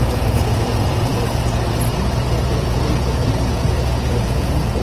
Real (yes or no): no